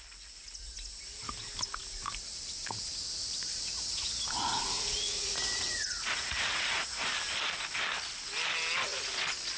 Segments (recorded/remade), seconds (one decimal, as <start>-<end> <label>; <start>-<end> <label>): 0.0-3.4 recorded; 3.4-7.1 remade; 7.1-9.6 recorded